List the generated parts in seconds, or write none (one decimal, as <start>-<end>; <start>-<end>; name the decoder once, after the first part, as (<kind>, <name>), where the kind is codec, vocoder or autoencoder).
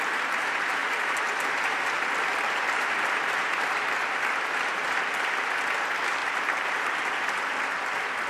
6.2-7.4 (vocoder, BigVGAN v2)